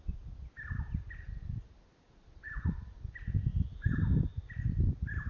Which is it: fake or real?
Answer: real